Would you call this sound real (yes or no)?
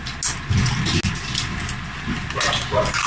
yes